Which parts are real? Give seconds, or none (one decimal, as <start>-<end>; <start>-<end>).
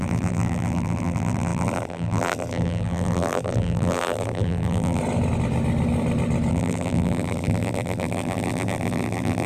5.0-6.5